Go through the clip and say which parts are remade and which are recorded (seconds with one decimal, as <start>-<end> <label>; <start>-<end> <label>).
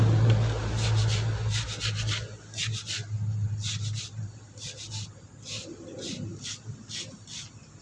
0.0-7.8 recorded